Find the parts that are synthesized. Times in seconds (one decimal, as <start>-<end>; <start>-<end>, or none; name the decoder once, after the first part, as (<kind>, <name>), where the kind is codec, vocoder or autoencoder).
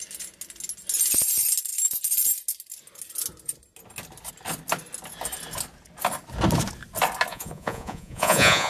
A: 7.3-8.7 (vocoder, Vocos)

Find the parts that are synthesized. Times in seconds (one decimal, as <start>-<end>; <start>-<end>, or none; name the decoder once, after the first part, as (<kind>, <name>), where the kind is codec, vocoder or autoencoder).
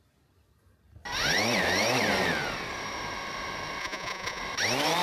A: 3.8-4.4 (vocoder, Vocos)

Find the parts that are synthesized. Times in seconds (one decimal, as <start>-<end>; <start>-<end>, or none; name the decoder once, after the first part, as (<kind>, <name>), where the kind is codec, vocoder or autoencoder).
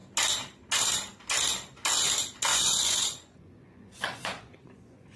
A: 2.5-5.2 (vocoder, Vocos)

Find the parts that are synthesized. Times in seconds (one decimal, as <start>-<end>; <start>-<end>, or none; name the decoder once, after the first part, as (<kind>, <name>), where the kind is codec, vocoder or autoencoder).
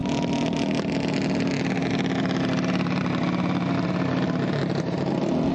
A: none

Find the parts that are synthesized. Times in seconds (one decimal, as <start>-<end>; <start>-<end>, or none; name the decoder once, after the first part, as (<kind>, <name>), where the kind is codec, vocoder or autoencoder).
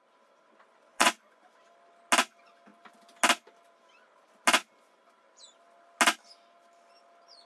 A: 0.9-1.4 (vocoder, Vocos)